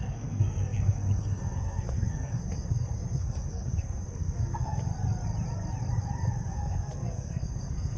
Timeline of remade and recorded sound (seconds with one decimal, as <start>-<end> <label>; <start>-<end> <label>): 0.0-4.9 remade; 4.9-6.5 recorded; 6.5-8.0 remade